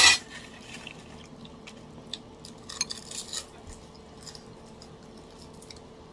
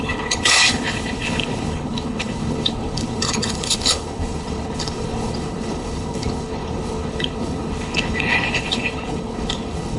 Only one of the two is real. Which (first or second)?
first